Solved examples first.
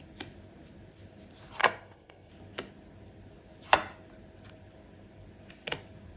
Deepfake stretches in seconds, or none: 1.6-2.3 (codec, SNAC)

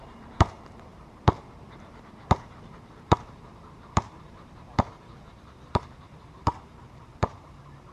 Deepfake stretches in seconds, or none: 0.0-7.9 (vocoder, BigVGAN v2)

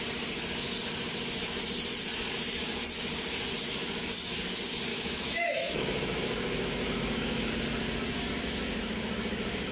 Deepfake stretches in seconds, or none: 4.9-7.5 (autoencoder, DAC-VAE)